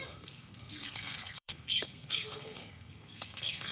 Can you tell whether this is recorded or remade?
remade